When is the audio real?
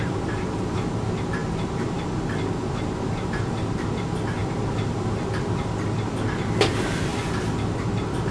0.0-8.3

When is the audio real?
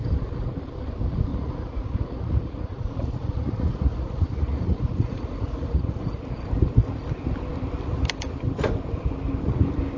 0.0-1.3; 6.2-10.0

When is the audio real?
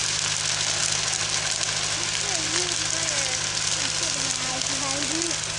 0.0-5.6